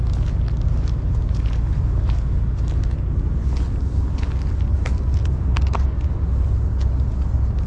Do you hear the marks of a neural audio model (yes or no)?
no